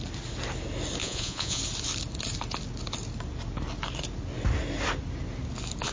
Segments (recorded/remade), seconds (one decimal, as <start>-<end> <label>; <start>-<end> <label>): 0.0-1.0 recorded; 1.0-1.6 remade; 1.6-5.9 recorded